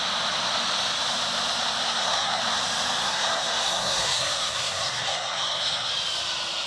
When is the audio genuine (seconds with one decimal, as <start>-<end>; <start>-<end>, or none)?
0.0-1.8; 2.4-3.0; 5.9-6.7